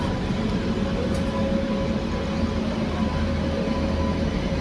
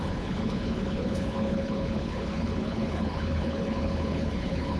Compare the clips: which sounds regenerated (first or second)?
second